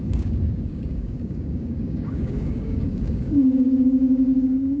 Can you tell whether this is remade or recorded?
remade